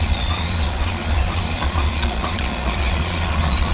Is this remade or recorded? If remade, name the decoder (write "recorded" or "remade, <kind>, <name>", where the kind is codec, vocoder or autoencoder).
remade, vocoder, Vocos